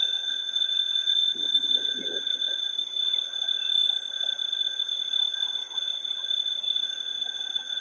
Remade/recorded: remade